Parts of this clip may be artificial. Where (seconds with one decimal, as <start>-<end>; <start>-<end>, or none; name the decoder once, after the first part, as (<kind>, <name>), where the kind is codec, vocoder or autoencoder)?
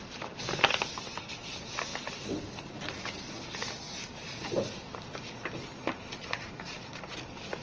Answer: none